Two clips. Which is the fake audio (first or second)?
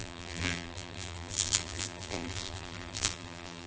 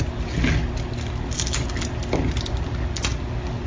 first